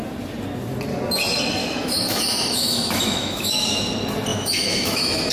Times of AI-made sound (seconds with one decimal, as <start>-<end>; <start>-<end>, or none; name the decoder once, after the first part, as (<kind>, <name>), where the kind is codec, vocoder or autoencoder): 1.6-3.9 (autoencoder, DAC-VAE); 4.3-5.3